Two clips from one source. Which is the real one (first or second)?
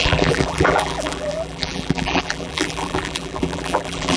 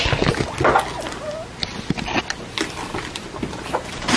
second